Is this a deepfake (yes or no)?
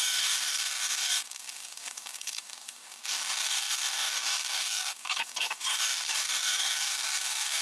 yes